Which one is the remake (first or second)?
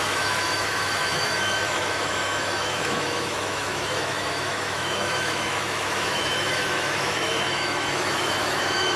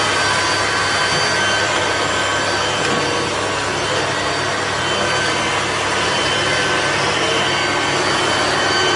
first